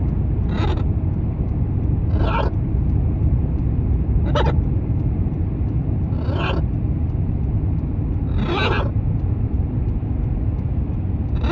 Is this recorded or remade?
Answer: recorded